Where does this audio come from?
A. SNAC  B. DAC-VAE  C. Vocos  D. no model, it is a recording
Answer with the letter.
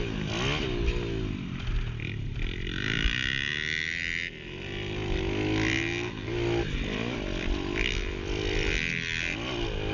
D